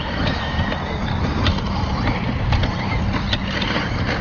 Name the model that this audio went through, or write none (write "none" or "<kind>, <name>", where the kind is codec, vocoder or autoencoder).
none